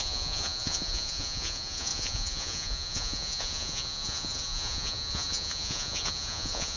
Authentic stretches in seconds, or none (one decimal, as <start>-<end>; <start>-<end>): none